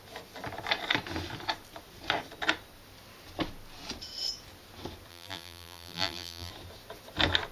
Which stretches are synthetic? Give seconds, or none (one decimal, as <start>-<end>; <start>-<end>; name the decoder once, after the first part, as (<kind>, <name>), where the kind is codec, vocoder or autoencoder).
5.1-6.5 (vocoder, BigVGAN v2)